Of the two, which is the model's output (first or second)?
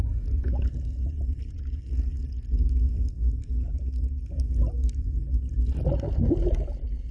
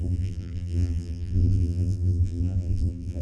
second